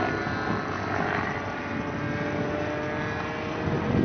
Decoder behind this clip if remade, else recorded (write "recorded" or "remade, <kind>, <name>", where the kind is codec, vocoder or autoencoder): recorded